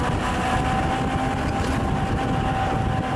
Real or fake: real